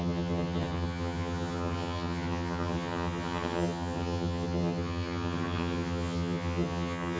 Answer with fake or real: fake